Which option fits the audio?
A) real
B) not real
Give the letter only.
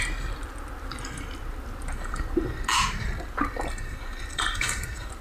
A